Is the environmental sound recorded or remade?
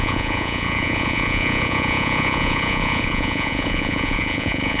remade